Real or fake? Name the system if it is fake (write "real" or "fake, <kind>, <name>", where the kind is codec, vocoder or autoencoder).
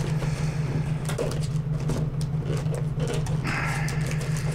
real